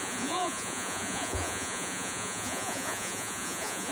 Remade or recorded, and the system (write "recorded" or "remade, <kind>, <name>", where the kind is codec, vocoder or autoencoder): remade, vocoder, Vocos